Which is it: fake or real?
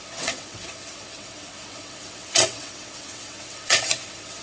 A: fake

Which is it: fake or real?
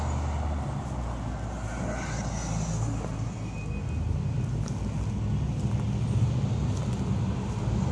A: real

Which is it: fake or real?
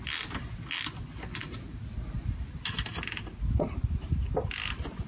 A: real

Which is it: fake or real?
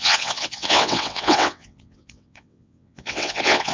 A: fake